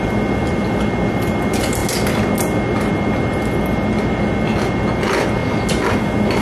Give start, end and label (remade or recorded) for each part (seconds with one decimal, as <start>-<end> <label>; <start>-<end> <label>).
0.0-6.4 recorded